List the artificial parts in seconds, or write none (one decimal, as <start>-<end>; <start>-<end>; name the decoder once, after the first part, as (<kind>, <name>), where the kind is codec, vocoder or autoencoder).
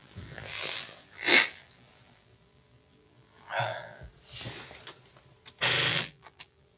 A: 0.0-4.1 (vocoder, BigVGAN v2); 5.9-6.8